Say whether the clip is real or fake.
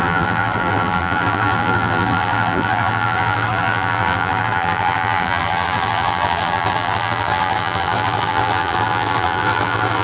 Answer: fake